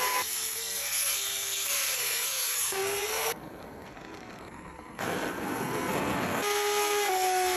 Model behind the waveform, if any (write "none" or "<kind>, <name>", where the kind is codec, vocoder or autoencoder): codec, SNAC